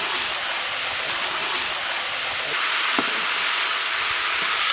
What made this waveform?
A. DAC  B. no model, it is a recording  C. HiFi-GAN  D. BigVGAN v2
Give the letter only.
B